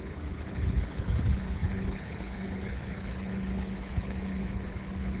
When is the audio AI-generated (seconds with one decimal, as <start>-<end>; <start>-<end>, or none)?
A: 0.0-5.2